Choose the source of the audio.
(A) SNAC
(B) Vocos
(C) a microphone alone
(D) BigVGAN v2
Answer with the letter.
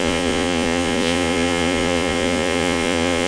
B